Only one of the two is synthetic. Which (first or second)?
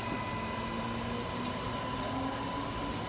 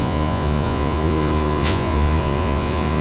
second